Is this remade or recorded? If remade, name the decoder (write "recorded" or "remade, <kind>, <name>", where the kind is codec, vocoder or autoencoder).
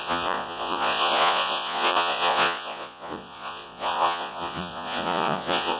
remade, vocoder, Vocos